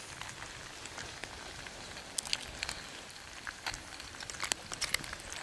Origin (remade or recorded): recorded